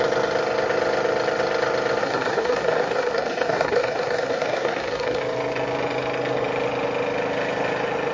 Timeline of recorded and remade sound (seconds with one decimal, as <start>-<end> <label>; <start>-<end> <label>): 0.0-2.0 recorded; 2.0-5.2 remade; 5.2-8.1 recorded